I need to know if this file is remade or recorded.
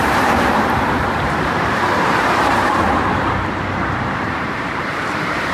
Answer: remade